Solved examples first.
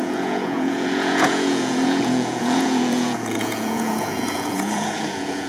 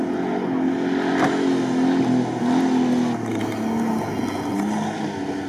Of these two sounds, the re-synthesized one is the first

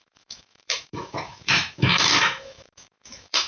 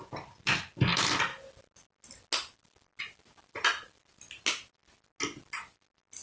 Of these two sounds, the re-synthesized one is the first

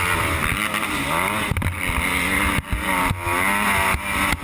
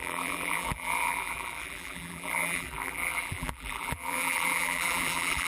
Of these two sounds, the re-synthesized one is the second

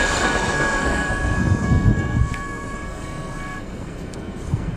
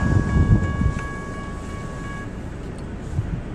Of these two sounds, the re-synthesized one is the first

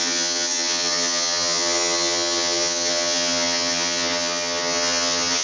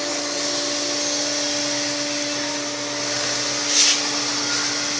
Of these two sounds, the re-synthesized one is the first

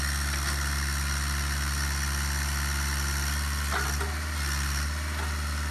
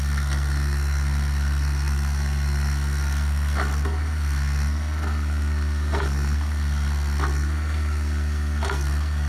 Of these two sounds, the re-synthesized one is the second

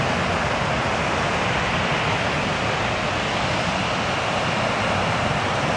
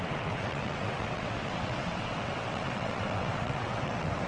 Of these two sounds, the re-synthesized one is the second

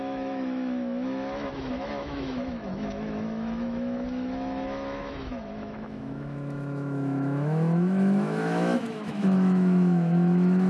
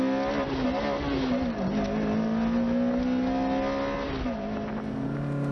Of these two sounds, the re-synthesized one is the first